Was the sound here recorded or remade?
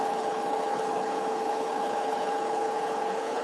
remade